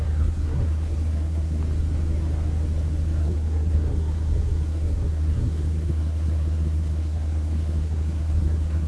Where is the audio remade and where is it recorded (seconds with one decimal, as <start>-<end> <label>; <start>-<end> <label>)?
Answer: 0.0-1.6 remade; 1.6-3.2 recorded; 3.2-8.9 remade